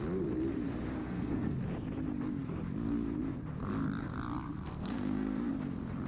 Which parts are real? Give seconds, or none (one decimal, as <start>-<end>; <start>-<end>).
0.0-1.0; 1.6-4.5; 5.5-6.1